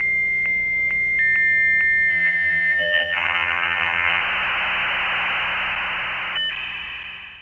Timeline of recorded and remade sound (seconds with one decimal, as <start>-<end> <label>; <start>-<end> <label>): 0.0-2.1 recorded; 2.1-4.2 remade; 4.2-7.4 recorded